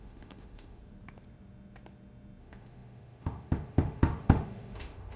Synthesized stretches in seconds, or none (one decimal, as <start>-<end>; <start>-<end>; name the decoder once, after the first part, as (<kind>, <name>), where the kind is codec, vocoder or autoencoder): 0.0-0.8 (autoencoder, DAC-VAE); 2.4-5.2